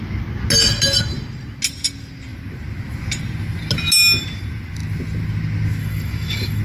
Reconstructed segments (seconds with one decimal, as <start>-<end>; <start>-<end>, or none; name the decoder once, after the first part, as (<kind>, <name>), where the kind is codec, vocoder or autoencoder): 5.8-6.6 (autoencoder, DAC-VAE)